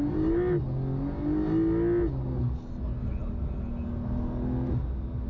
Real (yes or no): yes